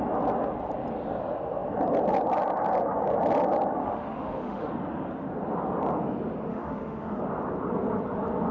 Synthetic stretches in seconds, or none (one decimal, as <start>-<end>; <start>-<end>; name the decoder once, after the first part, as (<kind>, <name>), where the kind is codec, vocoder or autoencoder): 3.8-4.7 (autoencoder, DAC-VAE); 6.5-7.2